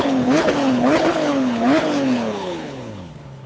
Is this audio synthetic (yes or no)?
yes